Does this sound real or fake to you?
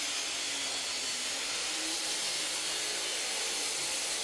real